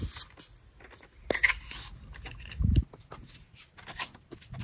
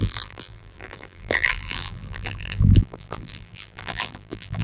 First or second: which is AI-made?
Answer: second